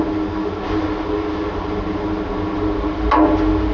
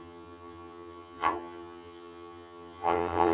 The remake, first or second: second